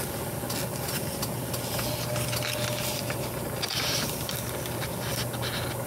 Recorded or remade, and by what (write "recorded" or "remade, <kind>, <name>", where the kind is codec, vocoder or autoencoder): recorded